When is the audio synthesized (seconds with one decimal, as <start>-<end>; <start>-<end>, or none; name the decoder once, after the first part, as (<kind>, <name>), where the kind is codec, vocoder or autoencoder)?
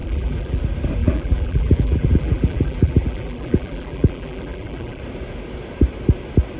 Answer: 0.0-0.6 (vocoder, BigVGAN v2); 1.0-5.0